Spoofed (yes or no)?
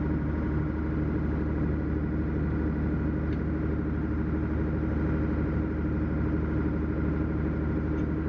no